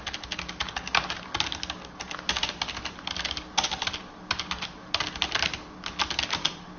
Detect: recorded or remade recorded